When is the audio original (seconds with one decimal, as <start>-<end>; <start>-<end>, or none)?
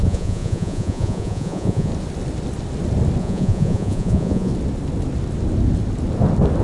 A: 1.9-3.2; 4.5-6.6